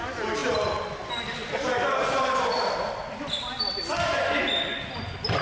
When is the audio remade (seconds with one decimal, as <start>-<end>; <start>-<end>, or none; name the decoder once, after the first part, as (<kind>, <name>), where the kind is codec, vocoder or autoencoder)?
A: none